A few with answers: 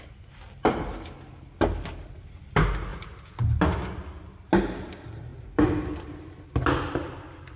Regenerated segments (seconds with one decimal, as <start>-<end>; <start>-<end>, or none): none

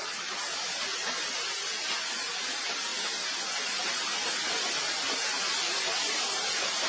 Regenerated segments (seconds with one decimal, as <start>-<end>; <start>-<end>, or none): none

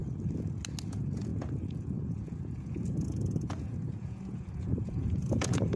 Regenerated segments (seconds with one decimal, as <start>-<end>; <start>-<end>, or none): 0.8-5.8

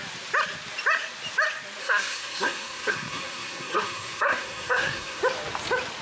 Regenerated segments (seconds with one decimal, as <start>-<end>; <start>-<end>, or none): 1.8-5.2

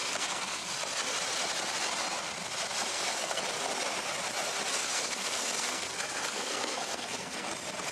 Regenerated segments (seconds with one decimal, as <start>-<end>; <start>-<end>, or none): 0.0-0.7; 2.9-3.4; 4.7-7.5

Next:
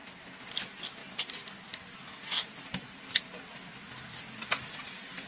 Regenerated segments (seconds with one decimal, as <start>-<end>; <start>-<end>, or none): none